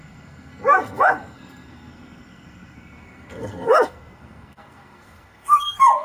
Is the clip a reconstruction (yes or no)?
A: yes